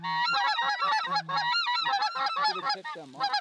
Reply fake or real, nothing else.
real